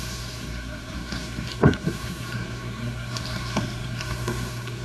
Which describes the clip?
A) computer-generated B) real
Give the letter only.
A